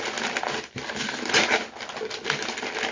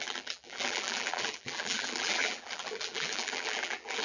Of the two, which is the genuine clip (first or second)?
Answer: first